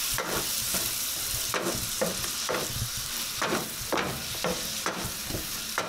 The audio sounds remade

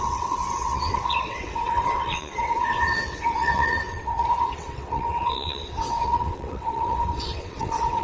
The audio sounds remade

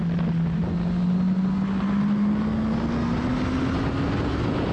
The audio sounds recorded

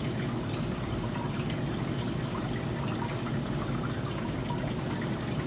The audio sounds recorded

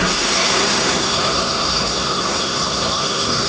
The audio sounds remade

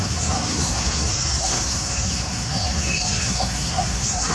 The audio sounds remade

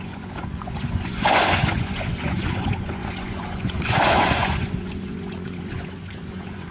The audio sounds remade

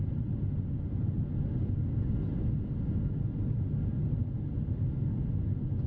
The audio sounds recorded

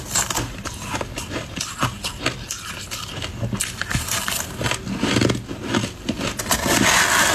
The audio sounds recorded